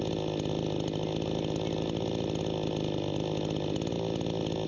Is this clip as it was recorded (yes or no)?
yes